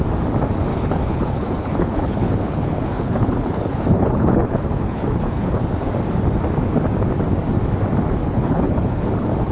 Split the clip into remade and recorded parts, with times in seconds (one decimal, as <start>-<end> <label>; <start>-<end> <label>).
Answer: 0.0-0.7 recorded; 0.7-5.5 remade; 5.5-8.2 recorded; 8.2-9.5 remade